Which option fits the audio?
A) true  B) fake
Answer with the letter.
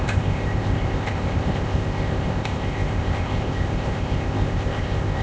B